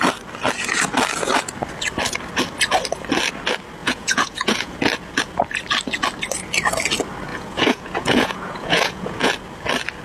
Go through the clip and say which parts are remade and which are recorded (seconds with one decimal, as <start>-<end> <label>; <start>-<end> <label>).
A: 0.0-3.8 recorded; 3.8-4.8 remade; 4.8-7.3 recorded; 7.3-9.3 remade; 9.3-10.0 recorded